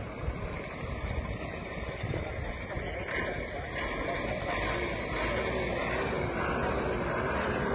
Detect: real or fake real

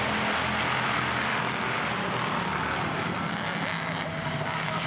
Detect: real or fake real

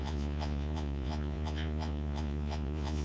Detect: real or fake fake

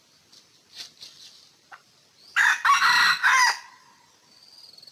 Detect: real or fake real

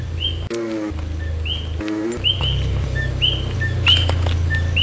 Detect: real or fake real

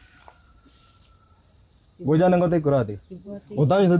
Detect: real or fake fake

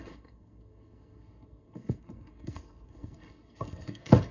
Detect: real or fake fake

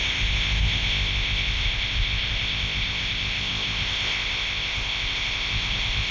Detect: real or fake fake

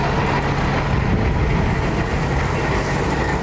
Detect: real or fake real